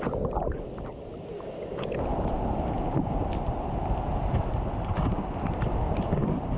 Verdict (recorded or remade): recorded